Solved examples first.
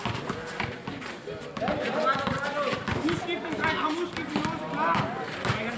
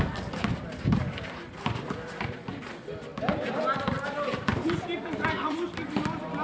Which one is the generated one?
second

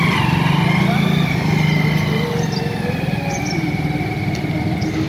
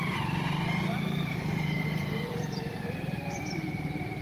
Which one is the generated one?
second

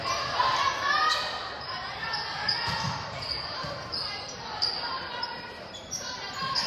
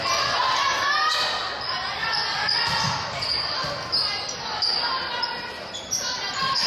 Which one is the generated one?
first